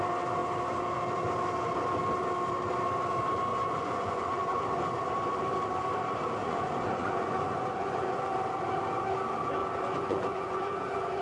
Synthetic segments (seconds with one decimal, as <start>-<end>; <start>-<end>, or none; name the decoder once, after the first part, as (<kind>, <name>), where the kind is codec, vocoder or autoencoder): 3.5-4.6 (vocoder, Vocos); 6.4-8.3; 9.6-11.2